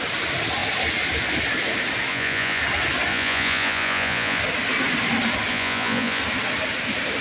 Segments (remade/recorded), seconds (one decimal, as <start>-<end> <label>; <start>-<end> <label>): 0.0-2.1 recorded; 2.1-2.6 remade; 2.6-3.1 recorded; 3.1-4.4 remade; 4.4-5.5 recorded; 5.5-6.2 remade; 6.2-7.2 recorded